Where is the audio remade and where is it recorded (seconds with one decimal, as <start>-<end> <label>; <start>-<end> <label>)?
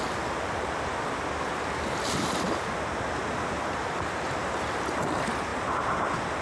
0.0-6.4 recorded